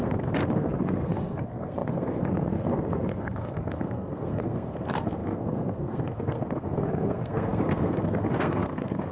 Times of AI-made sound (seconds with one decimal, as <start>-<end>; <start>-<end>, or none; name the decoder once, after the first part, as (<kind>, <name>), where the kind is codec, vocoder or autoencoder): 0.0-9.1 (codec, SNAC)